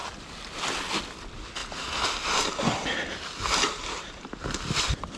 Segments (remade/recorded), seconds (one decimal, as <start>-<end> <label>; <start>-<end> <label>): 0.0-5.2 recorded